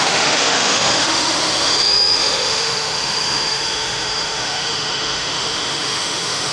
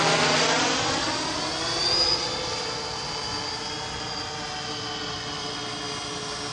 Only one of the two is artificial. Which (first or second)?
first